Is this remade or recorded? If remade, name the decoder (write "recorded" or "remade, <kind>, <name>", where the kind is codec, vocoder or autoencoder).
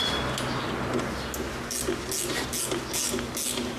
recorded